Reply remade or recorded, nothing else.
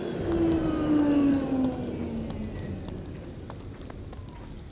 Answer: recorded